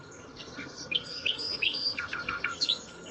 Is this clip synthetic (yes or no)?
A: yes